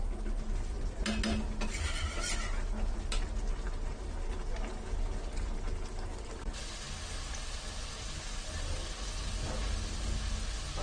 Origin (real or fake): real